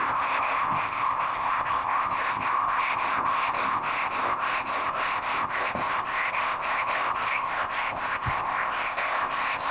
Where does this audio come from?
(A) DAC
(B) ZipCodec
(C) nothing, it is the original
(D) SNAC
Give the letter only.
B